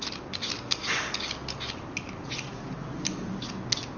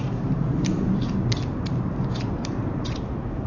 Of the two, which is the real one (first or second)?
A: first